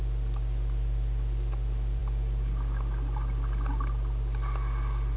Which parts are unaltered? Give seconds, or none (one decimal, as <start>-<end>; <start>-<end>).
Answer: 0.0-5.2